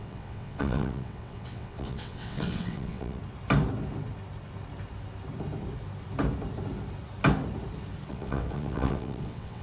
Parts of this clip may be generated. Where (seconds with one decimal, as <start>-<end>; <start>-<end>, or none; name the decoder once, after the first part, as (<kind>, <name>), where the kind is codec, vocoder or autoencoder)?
0.0-3.2 (vocoder, WaveNeXt); 8.1-9.6